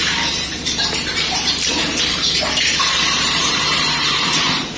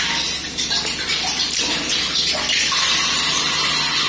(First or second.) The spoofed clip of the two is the first